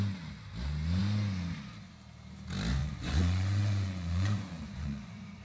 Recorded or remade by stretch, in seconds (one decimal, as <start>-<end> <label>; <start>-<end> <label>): 0.0-2.8 recorded; 2.8-5.4 remade